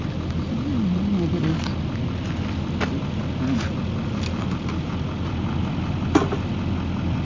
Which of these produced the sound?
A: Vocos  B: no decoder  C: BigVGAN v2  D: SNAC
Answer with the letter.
B